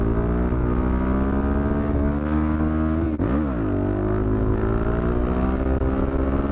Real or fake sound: real